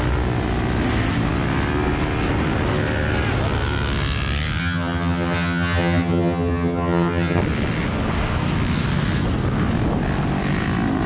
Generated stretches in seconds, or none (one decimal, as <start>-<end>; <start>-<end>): 4.6-7.4